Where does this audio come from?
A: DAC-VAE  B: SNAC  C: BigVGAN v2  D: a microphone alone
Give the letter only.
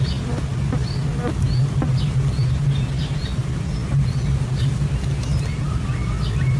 D